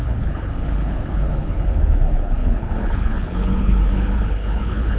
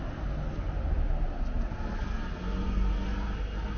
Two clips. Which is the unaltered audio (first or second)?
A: second